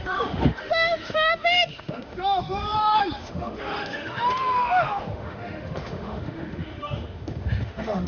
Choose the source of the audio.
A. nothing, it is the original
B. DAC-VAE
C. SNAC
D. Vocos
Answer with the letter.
B